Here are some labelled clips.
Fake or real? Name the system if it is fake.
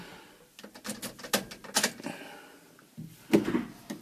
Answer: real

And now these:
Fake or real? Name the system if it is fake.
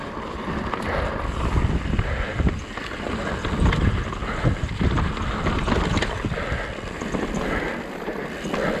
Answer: real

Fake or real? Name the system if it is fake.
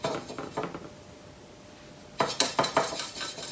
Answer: real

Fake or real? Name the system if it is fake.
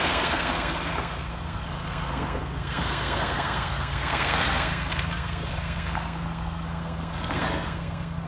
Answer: fake, codec, SNAC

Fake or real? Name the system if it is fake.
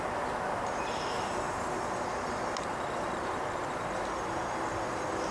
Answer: real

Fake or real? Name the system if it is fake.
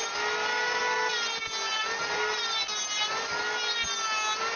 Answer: real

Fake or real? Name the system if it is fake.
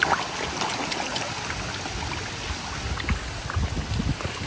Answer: real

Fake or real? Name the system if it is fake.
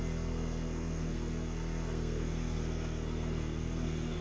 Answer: fake, codec, SNAC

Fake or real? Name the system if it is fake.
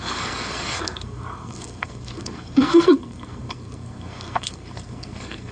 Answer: fake, codec, SNAC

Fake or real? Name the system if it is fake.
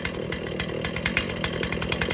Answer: real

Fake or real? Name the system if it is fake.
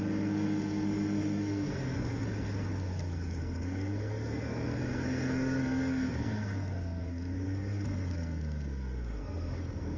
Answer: fake, codec, SNAC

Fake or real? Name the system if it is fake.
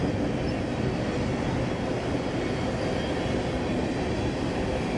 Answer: real